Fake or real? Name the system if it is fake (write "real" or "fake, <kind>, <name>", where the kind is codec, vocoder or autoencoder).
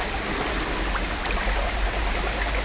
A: real